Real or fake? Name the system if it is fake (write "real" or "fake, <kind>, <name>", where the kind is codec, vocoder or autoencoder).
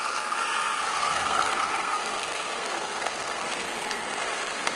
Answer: fake, codec, SNAC